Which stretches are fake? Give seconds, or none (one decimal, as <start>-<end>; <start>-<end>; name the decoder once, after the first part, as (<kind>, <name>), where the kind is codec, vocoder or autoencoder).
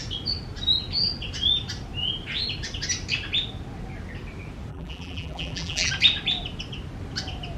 4.7-5.9 (vocoder, BigVGAN v2)